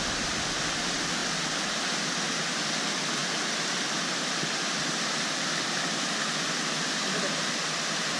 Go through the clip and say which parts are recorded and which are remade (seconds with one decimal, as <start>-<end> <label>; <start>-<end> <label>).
0.0-8.2 recorded